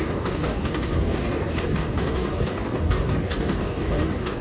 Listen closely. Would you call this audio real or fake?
fake